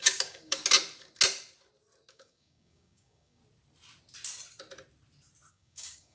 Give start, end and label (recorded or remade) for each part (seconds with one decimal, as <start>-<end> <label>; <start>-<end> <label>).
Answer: 0.0-0.6 remade; 0.6-2.1 recorded; 2.1-3.4 remade; 3.4-5.5 recorded; 5.5-6.1 remade